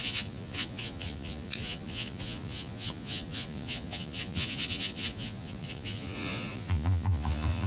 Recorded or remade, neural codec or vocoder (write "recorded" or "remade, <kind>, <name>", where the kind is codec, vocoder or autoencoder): remade, vocoder, Vocos